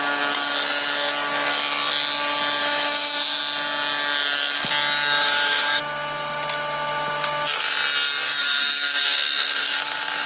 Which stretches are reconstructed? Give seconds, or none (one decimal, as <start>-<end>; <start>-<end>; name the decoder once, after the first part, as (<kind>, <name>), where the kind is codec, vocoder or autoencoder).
2.6-3.4 (autoencoder, DAC-VAE); 5.2-5.8; 8.4-10.3